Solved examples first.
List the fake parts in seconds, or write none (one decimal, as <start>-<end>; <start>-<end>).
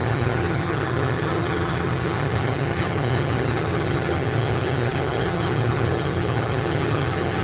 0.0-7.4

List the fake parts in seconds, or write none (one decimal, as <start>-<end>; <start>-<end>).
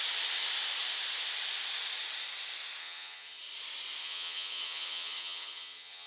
2.8-3.4; 4.0-6.1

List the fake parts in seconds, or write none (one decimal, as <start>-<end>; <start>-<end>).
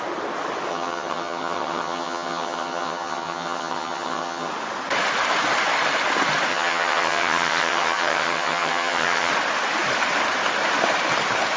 0.7-4.5; 6.5-9.3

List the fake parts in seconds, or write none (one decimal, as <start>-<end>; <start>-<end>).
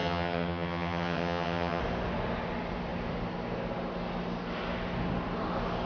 0.0-1.8